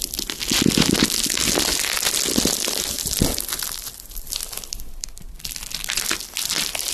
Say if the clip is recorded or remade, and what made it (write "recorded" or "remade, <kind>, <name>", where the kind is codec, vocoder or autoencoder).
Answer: recorded